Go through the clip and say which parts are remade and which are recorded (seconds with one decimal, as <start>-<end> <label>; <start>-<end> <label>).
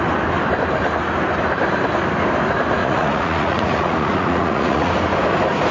0.0-2.8 recorded; 2.8-4.9 remade; 4.9-5.7 recorded